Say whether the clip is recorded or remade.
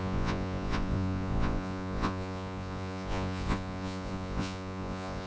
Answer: remade